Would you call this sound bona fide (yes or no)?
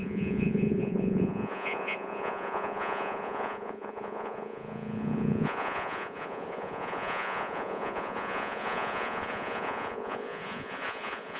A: no